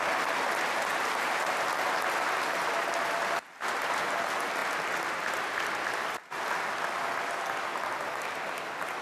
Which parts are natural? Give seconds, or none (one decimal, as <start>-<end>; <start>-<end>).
0.0-0.9; 1.5-7.7; 8.6-9.0